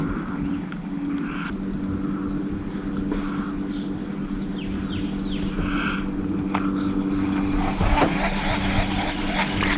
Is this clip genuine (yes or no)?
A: yes